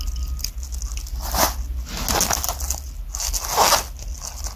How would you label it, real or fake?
real